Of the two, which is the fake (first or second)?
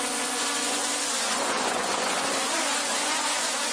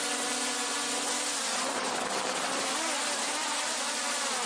first